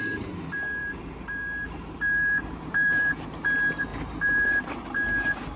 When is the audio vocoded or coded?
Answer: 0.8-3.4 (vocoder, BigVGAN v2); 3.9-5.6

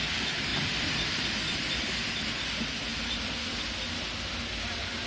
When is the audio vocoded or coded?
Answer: 0.5-2.1 (vocoder, BigVGAN v2)